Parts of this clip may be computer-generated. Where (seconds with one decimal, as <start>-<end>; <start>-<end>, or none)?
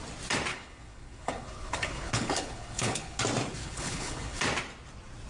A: 0.5-3.2; 3.6-4.4